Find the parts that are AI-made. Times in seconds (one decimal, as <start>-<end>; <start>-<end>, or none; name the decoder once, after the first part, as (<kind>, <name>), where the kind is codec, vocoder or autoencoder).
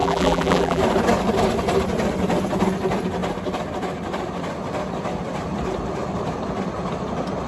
0.0-0.8 (vocoder, BigVGAN v2)